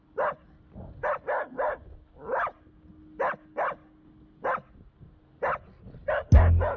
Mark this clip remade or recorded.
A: recorded